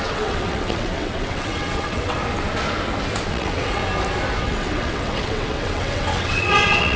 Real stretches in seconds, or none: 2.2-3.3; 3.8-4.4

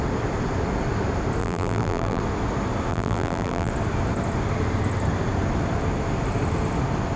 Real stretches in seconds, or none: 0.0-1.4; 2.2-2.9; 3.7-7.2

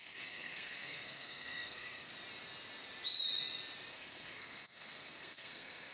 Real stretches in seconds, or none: 2.1-3.9

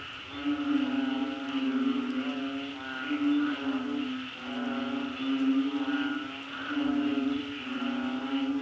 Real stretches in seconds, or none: 0.0-7.1; 7.8-8.6

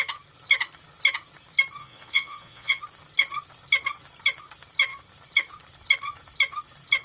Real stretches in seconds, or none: 0.0-1.8; 2.8-7.0